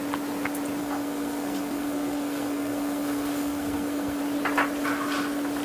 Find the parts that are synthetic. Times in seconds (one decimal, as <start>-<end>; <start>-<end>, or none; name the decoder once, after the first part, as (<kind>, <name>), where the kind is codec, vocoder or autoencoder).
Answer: 0.8-4.2 (codec, SNAC)